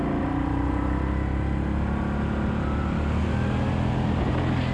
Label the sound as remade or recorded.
recorded